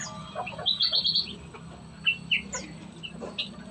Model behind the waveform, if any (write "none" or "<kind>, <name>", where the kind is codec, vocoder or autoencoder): none